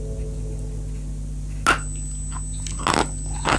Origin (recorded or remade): recorded